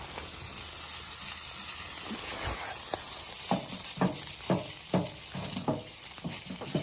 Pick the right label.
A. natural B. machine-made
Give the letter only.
A